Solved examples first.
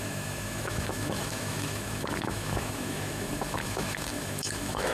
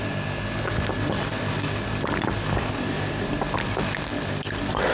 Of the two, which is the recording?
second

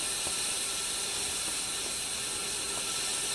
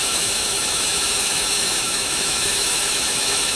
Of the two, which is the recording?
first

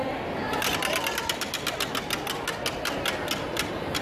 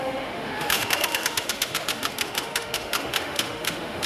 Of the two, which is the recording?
first